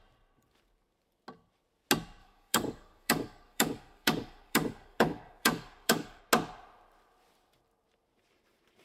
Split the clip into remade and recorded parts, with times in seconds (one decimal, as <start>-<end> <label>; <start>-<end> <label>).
0.0-2.2 recorded; 2.2-6.2 remade; 6.2-8.8 recorded

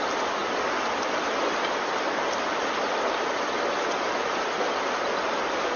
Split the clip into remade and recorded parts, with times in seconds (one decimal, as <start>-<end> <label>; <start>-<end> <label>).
0.0-5.8 recorded

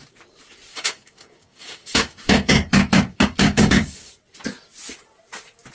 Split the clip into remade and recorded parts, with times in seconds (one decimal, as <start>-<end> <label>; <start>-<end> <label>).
0.0-0.7 recorded; 0.7-4.1 remade; 4.1-5.7 recorded

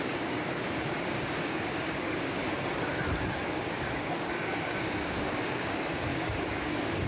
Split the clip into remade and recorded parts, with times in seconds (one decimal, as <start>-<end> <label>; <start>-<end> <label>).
0.0-2.4 remade; 2.4-3.5 recorded; 3.5-7.1 remade

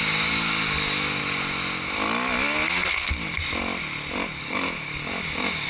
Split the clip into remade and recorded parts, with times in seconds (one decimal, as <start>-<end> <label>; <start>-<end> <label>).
0.0-1.2 remade; 1.2-4.4 recorded; 4.4-5.7 remade